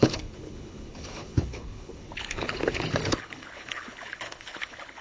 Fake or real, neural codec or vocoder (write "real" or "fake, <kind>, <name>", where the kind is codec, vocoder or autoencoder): fake, codec, HILCodec